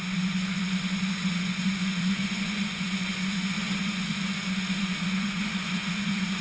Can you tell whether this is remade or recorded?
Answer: remade